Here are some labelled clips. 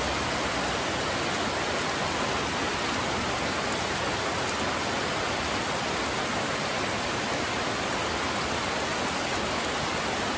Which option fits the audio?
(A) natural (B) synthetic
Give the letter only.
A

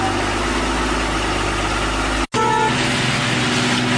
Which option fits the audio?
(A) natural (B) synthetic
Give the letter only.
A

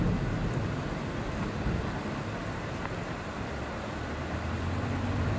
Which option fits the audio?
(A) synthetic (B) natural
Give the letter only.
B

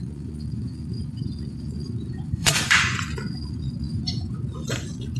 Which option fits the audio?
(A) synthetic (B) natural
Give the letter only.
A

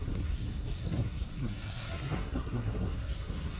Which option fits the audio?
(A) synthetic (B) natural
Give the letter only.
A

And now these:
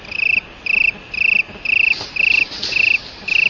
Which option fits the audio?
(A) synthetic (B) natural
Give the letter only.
B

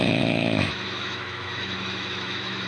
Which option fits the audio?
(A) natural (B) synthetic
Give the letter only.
B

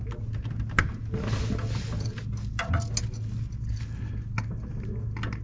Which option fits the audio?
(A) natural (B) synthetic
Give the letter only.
A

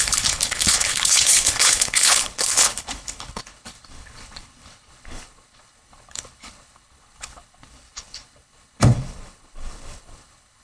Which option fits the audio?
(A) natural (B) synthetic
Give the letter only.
B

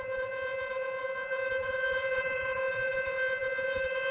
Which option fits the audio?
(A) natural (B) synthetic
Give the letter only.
B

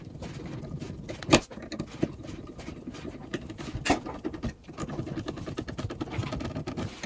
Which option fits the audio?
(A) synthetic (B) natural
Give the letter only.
B